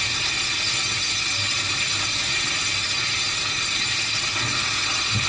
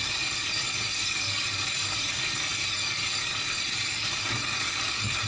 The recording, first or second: first